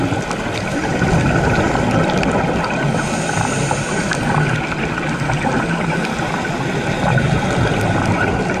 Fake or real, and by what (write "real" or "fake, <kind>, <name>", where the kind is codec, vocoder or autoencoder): real